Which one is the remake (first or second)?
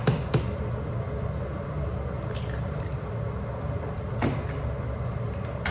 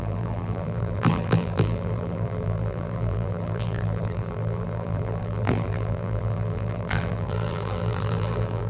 second